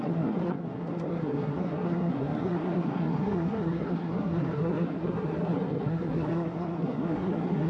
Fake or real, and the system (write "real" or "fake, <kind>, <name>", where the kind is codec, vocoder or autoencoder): fake, codec, SNAC